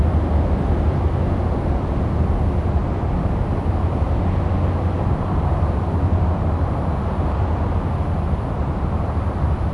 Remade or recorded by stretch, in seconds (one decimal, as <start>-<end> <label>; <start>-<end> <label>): 0.0-9.7 recorded